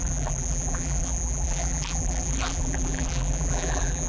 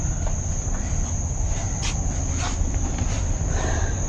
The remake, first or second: first